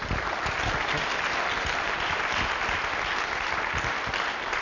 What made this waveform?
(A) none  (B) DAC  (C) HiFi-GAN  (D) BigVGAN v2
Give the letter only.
A